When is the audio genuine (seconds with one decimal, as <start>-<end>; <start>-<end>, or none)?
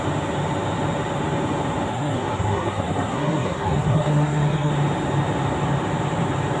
0.0-1.9; 4.7-6.6